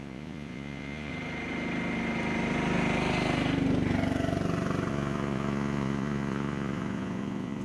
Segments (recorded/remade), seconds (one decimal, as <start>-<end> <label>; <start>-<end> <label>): 0.0-1.1 remade; 1.1-4.9 recorded; 4.9-7.6 remade